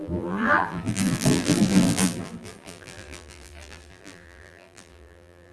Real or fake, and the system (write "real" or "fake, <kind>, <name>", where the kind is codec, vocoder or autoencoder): fake, vocoder, BigVGAN v2